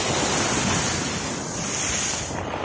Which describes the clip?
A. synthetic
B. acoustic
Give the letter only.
B